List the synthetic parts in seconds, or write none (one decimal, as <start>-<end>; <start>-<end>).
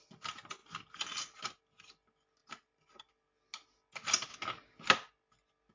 2.4-3.1